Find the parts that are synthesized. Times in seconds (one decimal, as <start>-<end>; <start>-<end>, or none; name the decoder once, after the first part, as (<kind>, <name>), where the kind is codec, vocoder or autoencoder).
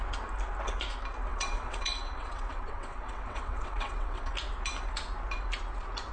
1.3-4.3 (vocoder, WaveNeXt)